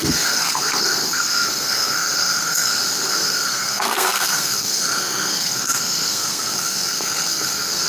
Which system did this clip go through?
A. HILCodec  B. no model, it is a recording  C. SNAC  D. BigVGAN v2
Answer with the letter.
C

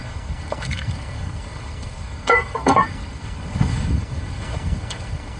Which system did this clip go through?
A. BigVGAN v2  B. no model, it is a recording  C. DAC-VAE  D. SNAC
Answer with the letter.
D